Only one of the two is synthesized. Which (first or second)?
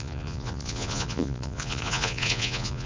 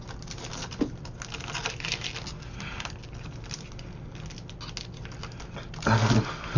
first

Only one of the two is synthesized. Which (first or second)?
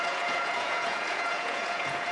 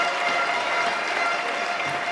first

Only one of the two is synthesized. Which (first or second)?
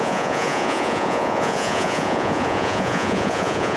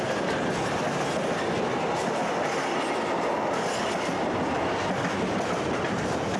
first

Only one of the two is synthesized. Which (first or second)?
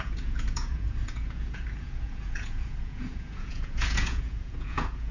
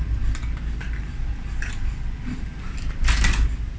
first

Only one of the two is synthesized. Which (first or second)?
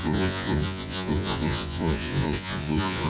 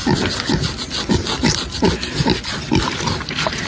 first